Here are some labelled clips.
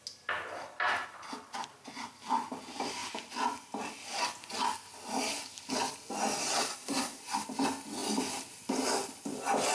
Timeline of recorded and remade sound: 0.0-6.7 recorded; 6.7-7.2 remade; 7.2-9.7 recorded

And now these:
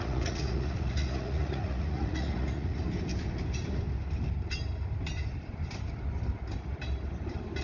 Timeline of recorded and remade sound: 0.0-2.8 remade; 2.8-7.6 recorded

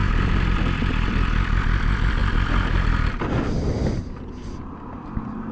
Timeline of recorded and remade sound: 0.0-5.5 recorded

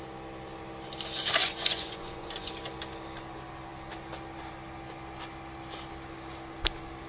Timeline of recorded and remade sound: 0.0-1.4 recorded; 1.4-2.5 remade; 2.5-7.1 recorded